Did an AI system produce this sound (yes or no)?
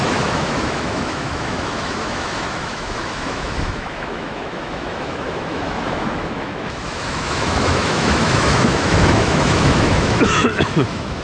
yes